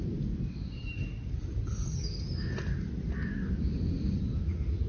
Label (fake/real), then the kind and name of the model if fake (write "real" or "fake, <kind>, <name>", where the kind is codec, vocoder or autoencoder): real